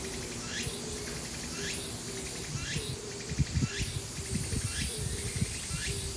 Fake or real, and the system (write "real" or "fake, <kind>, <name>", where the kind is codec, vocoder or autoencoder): real